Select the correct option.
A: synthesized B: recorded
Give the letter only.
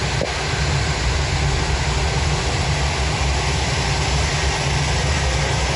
B